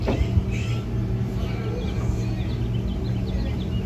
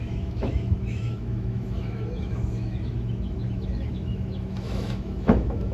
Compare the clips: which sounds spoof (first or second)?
second